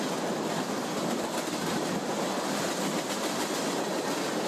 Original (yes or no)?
yes